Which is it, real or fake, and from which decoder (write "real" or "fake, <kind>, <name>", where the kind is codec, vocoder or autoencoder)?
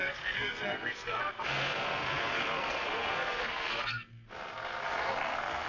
fake, codec, SNAC